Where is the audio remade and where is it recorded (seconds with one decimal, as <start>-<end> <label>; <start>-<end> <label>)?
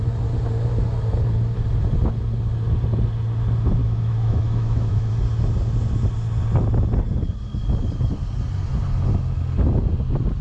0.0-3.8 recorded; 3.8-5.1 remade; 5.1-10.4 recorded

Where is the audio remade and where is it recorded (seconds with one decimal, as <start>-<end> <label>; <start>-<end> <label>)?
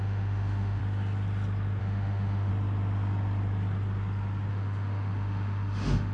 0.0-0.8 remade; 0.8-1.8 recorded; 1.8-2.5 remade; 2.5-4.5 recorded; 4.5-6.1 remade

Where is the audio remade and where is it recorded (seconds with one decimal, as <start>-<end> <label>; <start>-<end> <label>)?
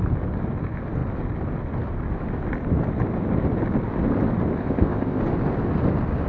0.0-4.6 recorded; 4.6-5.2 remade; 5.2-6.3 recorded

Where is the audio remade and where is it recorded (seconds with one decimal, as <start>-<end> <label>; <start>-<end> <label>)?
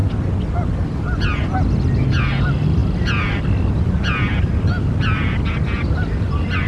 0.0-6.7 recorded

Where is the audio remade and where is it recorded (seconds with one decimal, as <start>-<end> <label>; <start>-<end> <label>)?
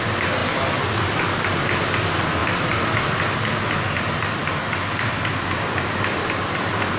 0.0-7.0 recorded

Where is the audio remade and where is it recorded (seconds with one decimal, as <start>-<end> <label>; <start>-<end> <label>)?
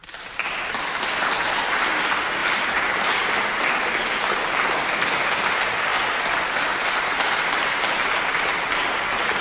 0.0-2.4 recorded; 2.4-3.5 remade; 3.5-5.9 recorded; 5.9-7.8 remade; 7.8-9.4 recorded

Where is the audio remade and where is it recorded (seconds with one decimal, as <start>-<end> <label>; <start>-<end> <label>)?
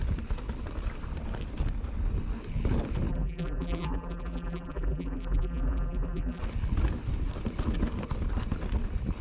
0.0-3.1 recorded; 3.1-6.4 remade; 6.4-9.2 recorded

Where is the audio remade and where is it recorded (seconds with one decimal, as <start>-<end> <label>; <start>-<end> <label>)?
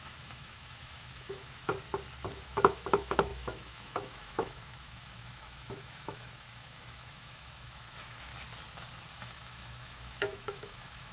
0.0-1.7 remade; 1.7-2.3 recorded; 2.3-8.3 remade; 8.3-9.1 recorded; 9.1-11.1 remade